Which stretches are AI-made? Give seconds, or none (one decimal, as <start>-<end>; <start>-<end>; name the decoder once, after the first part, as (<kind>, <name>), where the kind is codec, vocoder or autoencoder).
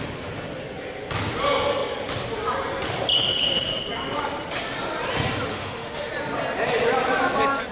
5.5-6.1 (autoencoder, DAC-VAE)